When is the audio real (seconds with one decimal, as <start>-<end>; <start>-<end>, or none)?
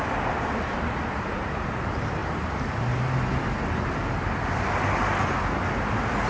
0.0-6.3